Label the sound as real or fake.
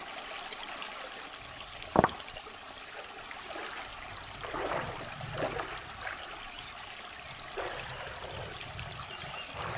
real